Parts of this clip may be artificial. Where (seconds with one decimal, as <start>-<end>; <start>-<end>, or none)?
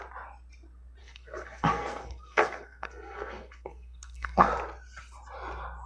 1.0-4.5